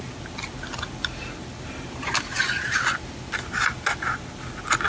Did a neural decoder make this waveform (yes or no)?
no